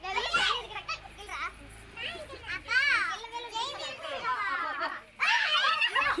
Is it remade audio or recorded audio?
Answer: recorded